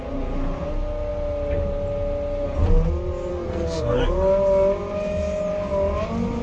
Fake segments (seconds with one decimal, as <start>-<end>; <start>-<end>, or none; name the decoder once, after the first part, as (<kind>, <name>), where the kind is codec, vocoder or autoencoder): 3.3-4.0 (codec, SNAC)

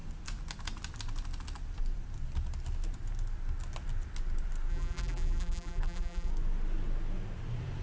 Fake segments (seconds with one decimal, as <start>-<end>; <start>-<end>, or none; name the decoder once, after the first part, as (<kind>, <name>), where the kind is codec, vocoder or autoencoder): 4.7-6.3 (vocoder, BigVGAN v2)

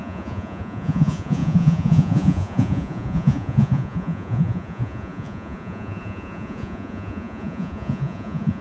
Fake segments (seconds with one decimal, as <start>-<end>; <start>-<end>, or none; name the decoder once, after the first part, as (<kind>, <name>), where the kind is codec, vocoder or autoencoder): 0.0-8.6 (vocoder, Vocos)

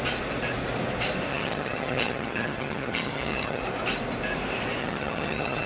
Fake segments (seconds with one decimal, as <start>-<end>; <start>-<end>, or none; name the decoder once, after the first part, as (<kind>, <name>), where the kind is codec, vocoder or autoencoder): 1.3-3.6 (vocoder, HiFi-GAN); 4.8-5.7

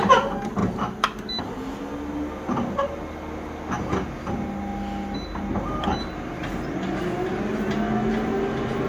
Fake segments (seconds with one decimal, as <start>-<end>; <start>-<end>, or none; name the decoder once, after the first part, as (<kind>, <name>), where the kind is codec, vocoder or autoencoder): none

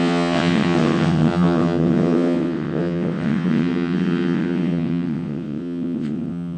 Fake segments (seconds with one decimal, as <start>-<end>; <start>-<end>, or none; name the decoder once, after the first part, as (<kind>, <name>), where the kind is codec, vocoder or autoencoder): 0.0-6.6 (vocoder, WaveNeXt)

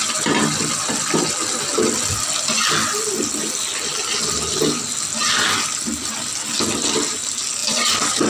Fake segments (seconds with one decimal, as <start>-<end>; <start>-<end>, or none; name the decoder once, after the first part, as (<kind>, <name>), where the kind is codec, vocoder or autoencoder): none

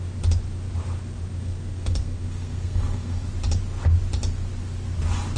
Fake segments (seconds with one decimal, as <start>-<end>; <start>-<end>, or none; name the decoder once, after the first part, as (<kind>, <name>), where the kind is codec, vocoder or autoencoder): 1.4-3.3 (codec, SNAC)